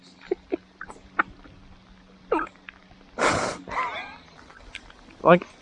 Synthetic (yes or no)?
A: no